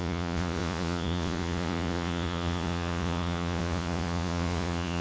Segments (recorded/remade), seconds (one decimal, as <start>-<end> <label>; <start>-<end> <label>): 0.0-5.0 remade